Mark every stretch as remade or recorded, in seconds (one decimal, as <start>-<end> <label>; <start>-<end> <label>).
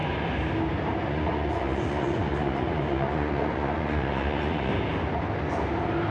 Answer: 0.0-1.0 recorded; 1.0-4.7 remade; 4.7-6.1 recorded